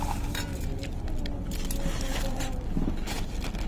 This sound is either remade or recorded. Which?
recorded